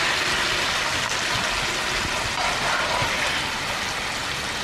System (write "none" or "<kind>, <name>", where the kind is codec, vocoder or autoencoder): none